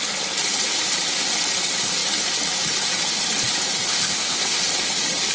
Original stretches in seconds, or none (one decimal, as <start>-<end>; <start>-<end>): 0.0-3.9; 4.6-5.3